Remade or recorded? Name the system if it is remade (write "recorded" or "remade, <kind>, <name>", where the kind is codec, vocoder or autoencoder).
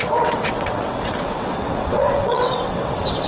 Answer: remade, vocoder, WaveNeXt